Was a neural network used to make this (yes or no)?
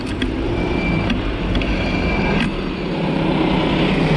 no